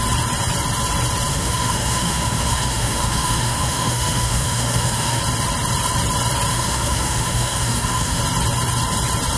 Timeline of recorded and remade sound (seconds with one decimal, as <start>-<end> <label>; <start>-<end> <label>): 0.0-1.3 recorded; 1.3-5.2 remade; 5.2-6.5 recorded; 6.5-8.2 remade; 8.2-9.4 recorded